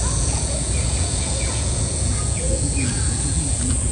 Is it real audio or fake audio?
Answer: fake